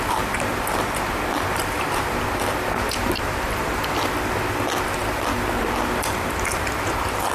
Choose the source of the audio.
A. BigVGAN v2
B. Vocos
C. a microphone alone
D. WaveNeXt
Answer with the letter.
C